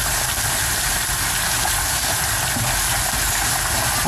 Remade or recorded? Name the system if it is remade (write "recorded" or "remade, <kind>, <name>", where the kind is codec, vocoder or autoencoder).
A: recorded